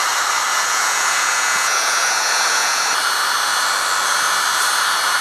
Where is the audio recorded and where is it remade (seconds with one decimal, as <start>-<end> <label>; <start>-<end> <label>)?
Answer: 0.0-0.5 recorded; 0.5-2.9 remade; 2.9-5.2 recorded